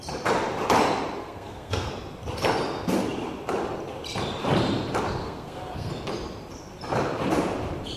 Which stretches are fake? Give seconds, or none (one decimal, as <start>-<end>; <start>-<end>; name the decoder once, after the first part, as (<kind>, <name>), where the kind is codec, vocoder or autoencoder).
1.2-1.9 (codec, SNAC); 5.2-5.9